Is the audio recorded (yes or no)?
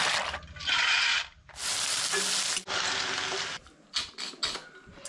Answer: yes